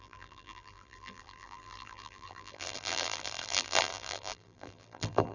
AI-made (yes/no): yes